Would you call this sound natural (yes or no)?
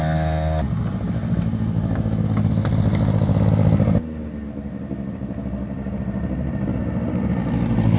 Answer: yes